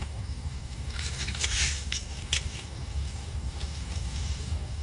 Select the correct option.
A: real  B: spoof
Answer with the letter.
B